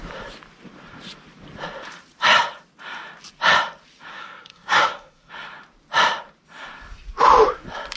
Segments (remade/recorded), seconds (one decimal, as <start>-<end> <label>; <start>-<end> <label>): 0.0-4.1 recorded; 4.1-5.3 remade; 5.3-8.0 recorded